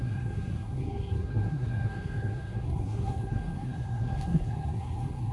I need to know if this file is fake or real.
fake